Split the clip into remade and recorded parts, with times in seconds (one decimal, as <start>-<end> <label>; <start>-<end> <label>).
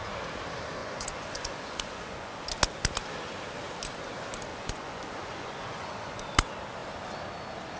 0.0-0.8 recorded; 0.8-2.4 remade; 2.4-4.5 recorded; 4.5-6.2 remade; 6.2-7.8 recorded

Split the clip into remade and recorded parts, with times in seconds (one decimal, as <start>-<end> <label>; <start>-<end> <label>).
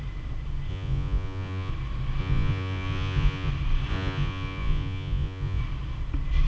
0.0-0.7 recorded; 0.7-1.7 remade; 1.7-2.2 recorded; 2.2-3.5 remade; 3.5-3.9 recorded; 3.9-5.6 remade; 5.6-6.5 recorded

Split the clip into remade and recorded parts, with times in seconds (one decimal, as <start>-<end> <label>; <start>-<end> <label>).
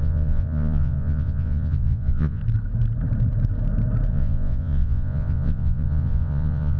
0.0-2.4 remade; 2.4-4.1 recorded; 4.1-6.8 remade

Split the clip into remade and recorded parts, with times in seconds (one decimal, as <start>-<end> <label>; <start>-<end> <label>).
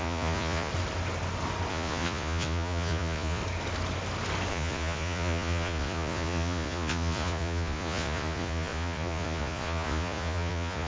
0.0-0.7 remade; 0.7-1.7 recorded; 1.7-3.4 remade; 3.4-4.5 recorded; 4.5-10.9 remade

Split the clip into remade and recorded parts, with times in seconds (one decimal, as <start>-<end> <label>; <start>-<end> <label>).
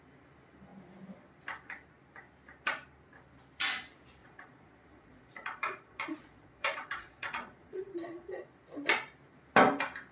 0.0-4.2 recorded; 4.2-8.5 remade; 8.5-10.1 recorded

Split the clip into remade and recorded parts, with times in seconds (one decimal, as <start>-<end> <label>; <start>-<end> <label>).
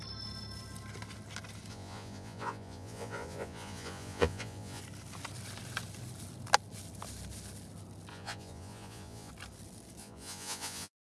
0.0-1.7 recorded; 1.7-4.8 remade; 4.8-8.1 recorded; 8.1-9.3 remade; 9.3-10.0 recorded; 10.0-11.2 remade